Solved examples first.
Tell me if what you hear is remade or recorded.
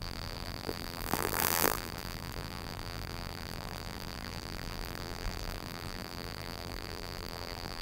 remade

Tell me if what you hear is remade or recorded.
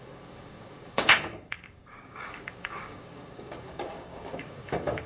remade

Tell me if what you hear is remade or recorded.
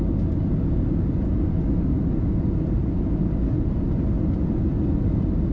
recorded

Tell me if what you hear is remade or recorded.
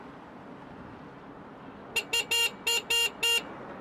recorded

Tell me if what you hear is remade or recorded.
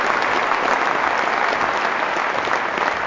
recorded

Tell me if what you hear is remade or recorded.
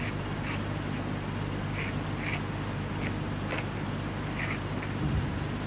recorded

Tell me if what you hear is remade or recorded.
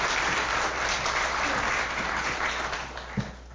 recorded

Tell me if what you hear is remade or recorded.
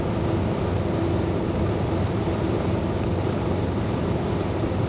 recorded